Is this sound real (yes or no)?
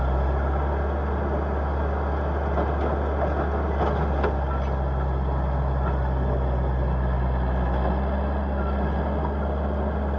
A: yes